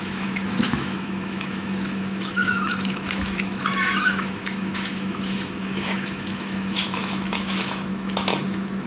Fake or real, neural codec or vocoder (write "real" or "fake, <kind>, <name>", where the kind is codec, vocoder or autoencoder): fake, autoencoder, DAC-VAE